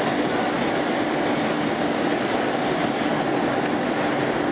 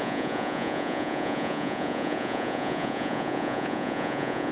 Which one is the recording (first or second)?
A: first